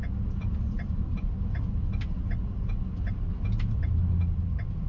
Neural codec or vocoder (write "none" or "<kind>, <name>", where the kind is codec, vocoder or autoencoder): none